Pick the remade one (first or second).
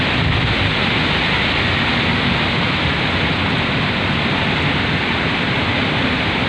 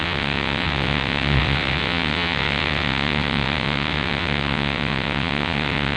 second